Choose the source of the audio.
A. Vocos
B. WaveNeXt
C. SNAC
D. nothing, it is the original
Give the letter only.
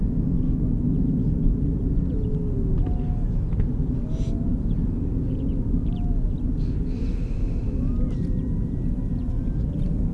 D